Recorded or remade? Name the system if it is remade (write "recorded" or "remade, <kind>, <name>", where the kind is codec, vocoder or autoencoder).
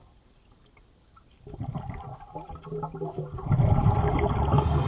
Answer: recorded